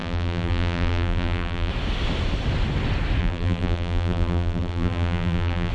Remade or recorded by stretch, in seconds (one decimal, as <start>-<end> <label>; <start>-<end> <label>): 0.0-1.7 remade; 1.7-3.2 recorded; 3.2-5.7 remade